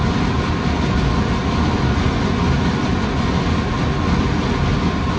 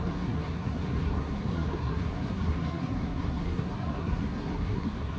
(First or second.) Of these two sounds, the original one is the first